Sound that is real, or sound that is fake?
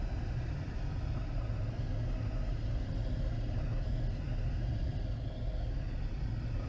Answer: real